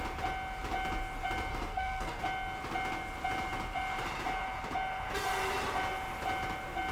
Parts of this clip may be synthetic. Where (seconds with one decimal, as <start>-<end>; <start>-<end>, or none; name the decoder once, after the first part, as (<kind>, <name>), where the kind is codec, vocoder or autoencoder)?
1.5-2.2 (codec, SNAC)